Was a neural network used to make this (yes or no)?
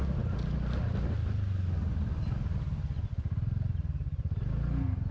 no